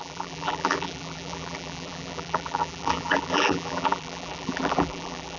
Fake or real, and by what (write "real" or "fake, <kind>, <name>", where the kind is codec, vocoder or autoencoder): fake, vocoder, BigVGAN v2